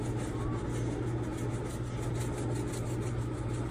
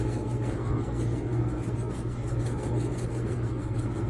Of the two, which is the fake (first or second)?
second